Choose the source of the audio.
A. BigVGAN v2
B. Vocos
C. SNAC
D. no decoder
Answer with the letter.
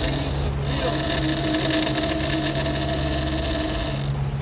D